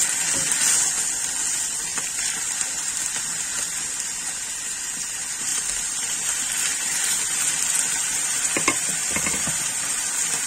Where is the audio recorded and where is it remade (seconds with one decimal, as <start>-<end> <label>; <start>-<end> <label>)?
0.0-5.5 recorded; 5.5-7.5 remade; 7.5-9.0 recorded; 9.0-9.6 remade; 9.6-10.5 recorded

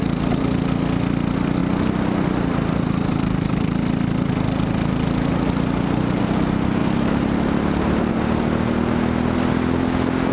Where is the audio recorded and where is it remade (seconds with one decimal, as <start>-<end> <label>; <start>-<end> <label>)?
0.0-6.8 recorded; 6.8-8.1 remade; 8.1-10.3 recorded

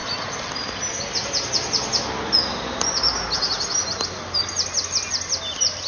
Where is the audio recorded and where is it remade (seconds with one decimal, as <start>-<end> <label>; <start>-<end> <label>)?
0.0-5.9 recorded

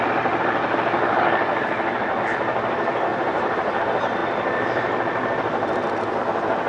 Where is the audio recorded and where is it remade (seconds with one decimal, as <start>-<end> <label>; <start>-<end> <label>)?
0.0-3.1 recorded; 3.1-3.8 remade; 3.8-6.7 recorded

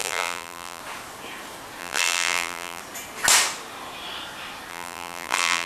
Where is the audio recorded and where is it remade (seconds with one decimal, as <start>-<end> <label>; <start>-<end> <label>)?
0.0-0.8 remade; 0.8-1.8 recorded; 1.8-2.8 remade; 2.8-4.7 recorded; 4.7-5.7 remade

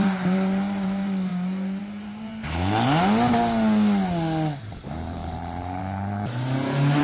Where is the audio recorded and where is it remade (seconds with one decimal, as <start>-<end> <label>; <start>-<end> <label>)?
0.0-1.3 remade; 1.3-1.8 recorded; 1.8-2.3 remade; 2.3-4.7 recorded; 4.7-7.0 remade

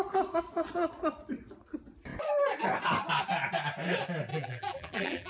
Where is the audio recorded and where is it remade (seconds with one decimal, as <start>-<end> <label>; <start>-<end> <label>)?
0.0-4.3 recorded; 4.3-5.3 remade